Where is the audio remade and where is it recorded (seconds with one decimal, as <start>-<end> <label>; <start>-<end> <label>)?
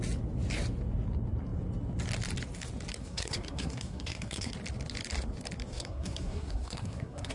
0.0-3.0 recorded; 3.0-4.5 remade; 4.5-5.7 recorded; 5.7-7.3 remade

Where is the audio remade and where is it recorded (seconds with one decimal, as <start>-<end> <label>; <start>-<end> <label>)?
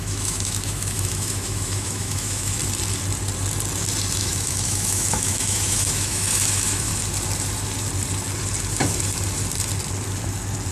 0.0-2.6 remade; 2.6-4.2 recorded; 4.2-6.9 remade; 6.9-10.7 recorded